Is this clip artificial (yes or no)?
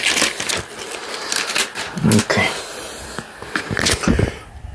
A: no